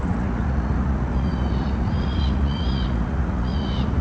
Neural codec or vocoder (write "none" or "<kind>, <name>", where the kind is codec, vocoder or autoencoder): vocoder, Vocos